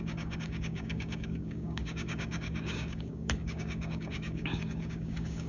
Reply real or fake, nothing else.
fake